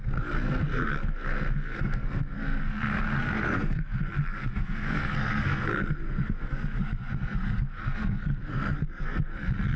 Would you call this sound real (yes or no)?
no